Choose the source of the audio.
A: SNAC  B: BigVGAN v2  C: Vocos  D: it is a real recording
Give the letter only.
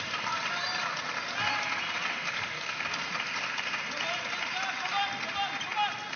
D